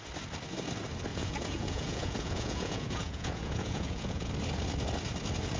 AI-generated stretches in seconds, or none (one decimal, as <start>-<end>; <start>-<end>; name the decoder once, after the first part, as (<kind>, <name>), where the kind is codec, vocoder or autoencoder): 1.1-4.3 (vocoder, Vocos)